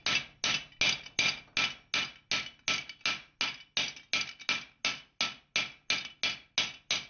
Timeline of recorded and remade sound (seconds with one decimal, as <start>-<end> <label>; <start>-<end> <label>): 0.0-7.1 recorded